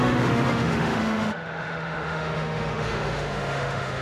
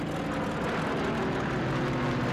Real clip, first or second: second